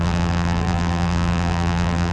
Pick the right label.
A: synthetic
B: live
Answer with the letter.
A